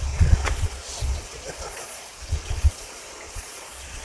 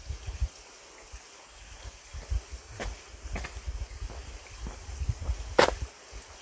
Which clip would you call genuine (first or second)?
second